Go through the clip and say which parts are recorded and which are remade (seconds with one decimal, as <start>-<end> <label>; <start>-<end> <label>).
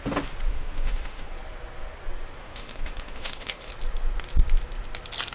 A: 0.0-0.5 recorded; 0.5-1.3 remade; 1.3-2.4 recorded; 2.4-3.7 remade; 3.7-5.3 recorded